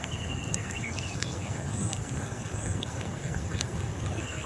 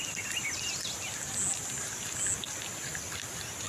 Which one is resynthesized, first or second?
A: first